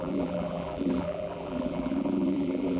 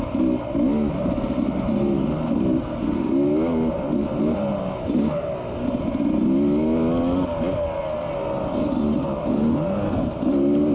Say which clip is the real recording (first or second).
second